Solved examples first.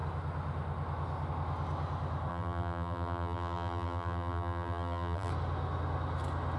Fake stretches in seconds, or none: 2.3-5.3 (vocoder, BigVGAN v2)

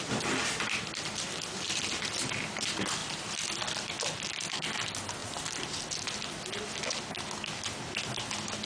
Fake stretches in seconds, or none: 3.0-4.5 (vocoder, BigVGAN v2); 5.2-5.8

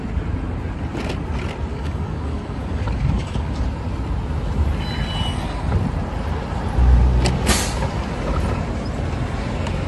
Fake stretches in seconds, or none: 1.7-3.6 (codec, DAC)

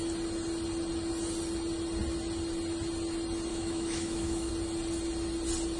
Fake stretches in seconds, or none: 3.5-4.5 (autoencoder, DAC-VAE)